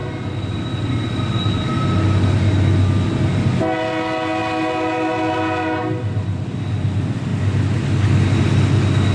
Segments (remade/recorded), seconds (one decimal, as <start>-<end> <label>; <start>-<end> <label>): 0.0-9.1 recorded